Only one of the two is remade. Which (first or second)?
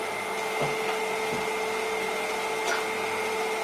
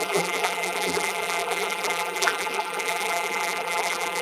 second